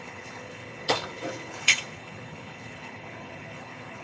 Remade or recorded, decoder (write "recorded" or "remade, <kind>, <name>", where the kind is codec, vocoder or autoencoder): remade, codec, HILCodec